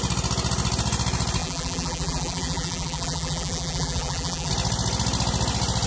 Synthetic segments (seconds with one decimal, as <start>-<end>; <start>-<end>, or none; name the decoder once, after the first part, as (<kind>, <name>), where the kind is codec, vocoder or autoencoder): 1.4-4.5 (vocoder, BigVGAN v2)